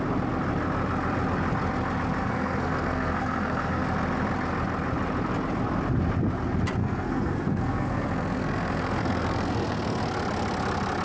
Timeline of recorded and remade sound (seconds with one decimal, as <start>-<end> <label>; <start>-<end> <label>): 0.0-2.2 recorded; 2.2-3.8 remade; 3.8-6.8 recorded; 6.8-10.0 remade; 10.0-11.0 recorded